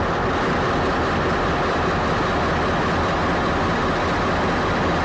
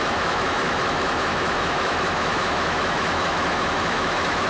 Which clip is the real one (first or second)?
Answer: first